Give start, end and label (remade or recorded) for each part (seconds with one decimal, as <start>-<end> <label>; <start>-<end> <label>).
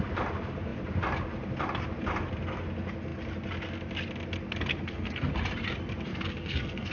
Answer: 0.0-4.7 recorded; 4.7-5.3 remade; 5.3-6.1 recorded; 6.1-6.9 remade